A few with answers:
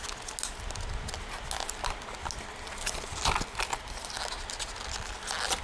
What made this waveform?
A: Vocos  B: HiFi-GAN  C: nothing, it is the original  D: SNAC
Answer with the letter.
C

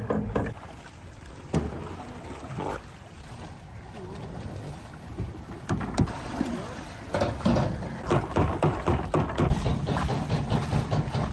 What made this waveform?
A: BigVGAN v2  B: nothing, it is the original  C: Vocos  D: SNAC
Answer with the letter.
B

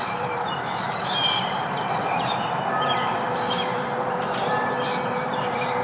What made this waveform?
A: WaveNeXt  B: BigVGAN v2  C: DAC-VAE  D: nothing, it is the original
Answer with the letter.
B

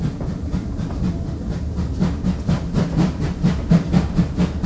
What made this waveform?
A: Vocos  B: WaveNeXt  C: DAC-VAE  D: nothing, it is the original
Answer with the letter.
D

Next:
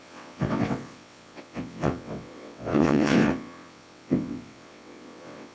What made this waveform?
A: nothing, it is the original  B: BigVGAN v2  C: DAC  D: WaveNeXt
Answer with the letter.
D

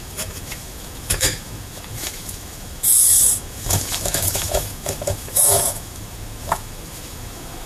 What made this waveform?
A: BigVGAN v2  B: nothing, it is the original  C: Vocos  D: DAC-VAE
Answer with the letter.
D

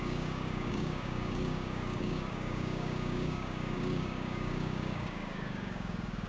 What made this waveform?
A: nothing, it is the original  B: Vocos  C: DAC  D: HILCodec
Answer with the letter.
C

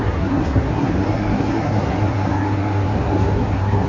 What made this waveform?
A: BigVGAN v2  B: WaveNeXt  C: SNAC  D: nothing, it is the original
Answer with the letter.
C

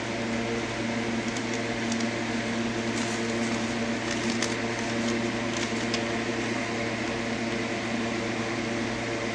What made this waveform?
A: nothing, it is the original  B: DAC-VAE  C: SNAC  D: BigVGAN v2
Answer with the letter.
A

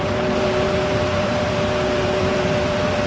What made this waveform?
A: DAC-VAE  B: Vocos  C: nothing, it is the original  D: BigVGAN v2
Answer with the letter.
D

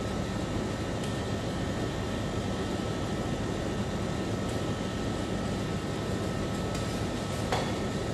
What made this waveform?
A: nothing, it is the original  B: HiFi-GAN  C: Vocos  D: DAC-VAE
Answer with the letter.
A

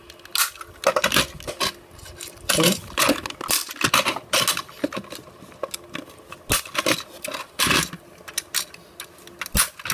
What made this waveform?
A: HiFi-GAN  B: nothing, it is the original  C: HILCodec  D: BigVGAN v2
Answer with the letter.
B